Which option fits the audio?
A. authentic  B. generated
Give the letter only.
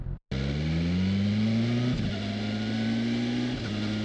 A